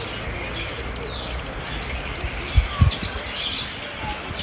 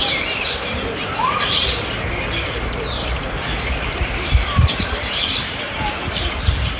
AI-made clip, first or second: second